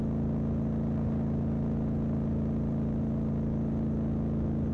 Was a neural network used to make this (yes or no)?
no